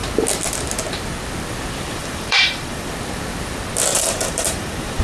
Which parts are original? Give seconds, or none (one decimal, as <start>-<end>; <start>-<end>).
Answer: 0.0-2.0; 2.9-3.9